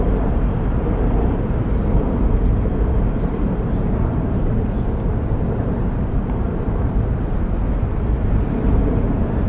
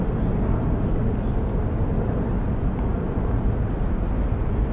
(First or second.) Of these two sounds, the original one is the second